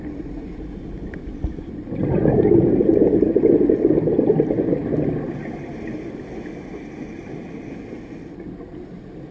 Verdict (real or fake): real